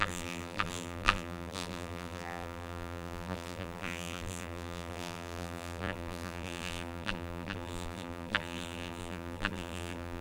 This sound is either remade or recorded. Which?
remade